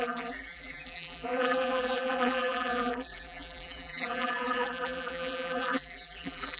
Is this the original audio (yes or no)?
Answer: no